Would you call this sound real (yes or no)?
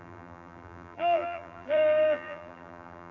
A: no